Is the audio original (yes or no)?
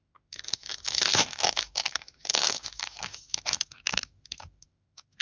no